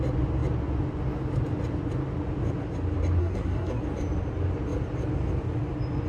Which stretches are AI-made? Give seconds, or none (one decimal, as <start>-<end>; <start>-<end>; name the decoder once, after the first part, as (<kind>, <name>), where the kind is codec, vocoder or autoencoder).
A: 3.2-3.8 (codec, SNAC)